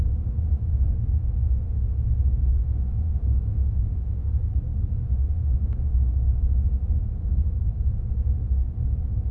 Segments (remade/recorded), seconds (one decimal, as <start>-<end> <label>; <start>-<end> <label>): 0.0-0.7 recorded; 0.7-4.5 remade; 4.5-5.1 recorded; 5.1-6.7 remade; 6.7-9.3 recorded